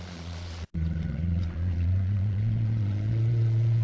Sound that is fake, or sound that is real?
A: fake